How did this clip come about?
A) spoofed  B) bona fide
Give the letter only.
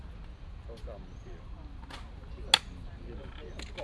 B